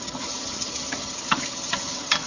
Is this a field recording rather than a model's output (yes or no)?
no